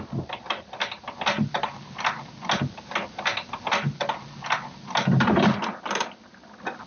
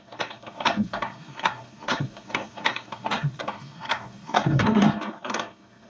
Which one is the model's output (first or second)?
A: second